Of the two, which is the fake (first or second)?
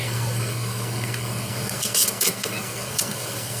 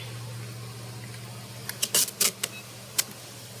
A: first